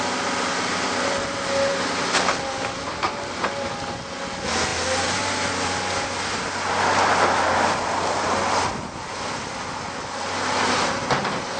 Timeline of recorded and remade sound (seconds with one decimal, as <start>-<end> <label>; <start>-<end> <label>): 0.0-1.7 remade; 1.7-3.1 recorded; 3.1-11.6 remade